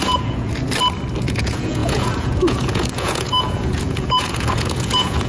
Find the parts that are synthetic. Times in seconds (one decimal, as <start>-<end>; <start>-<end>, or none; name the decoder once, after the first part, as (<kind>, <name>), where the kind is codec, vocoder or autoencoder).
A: 0.0-0.5 (vocoder, Vocos); 1.2-5.3